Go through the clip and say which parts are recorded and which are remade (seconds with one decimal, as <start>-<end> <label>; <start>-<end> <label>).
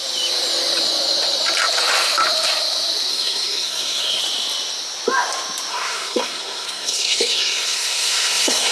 0.0-3.1 recorded; 3.1-4.2 remade; 4.2-5.7 recorded; 5.7-8.7 remade